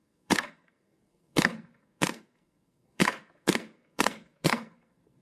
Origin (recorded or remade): remade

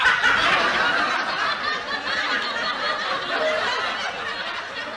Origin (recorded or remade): recorded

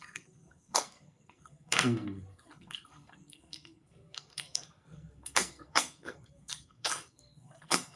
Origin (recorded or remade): remade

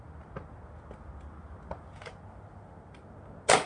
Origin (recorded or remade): recorded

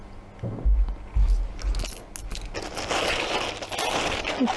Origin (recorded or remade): recorded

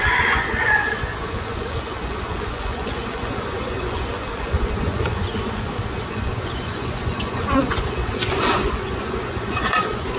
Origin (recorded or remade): remade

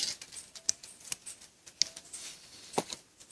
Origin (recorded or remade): recorded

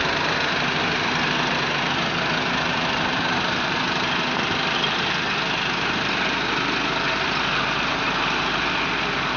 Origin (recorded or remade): remade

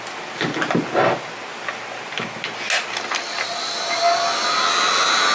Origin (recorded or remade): recorded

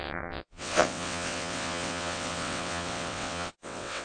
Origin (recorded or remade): remade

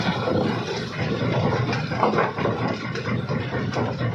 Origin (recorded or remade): recorded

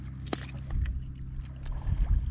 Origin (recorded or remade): recorded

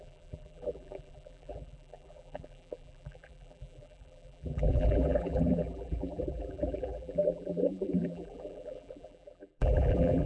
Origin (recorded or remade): remade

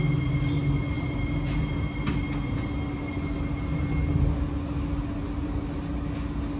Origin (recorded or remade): recorded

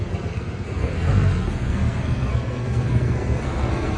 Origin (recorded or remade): remade